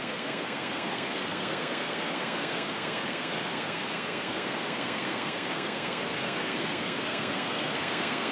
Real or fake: fake